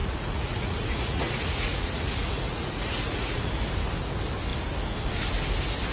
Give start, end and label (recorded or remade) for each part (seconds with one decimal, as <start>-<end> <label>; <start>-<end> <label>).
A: 0.0-3.5 remade; 3.5-5.9 recorded